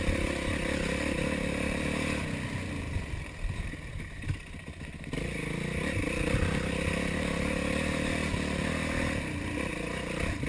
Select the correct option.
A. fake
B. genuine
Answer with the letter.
B